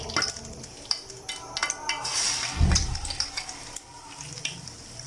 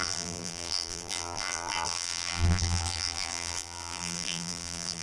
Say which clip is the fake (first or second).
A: second